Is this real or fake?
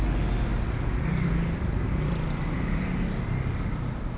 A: real